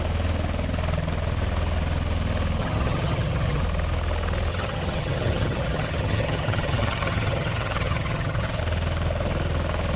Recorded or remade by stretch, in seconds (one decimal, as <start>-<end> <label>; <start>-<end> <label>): 0.0-2.6 recorded; 2.6-3.6 remade; 3.6-4.5 recorded; 4.5-8.6 remade; 8.6-10.0 recorded